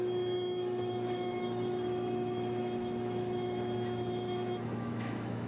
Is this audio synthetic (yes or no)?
yes